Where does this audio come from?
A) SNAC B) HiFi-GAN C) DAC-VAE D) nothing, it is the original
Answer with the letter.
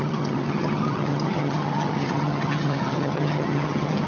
B